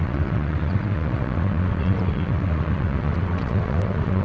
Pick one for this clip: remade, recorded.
remade